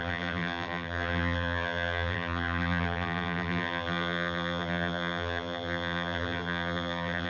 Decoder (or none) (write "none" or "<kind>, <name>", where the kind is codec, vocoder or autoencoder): vocoder, BigVGAN v2